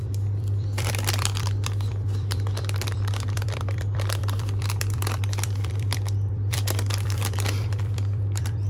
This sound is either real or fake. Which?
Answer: fake